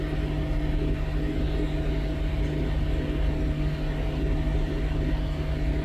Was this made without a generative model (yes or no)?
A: yes